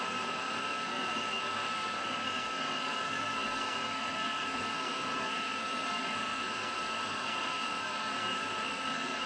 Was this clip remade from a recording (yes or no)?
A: yes